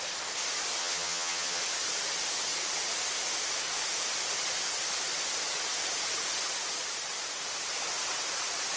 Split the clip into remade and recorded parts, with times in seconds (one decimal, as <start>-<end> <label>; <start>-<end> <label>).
0.0-0.8 recorded; 0.8-1.6 remade; 1.6-8.8 recorded